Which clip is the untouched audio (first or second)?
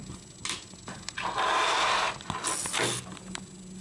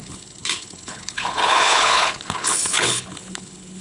first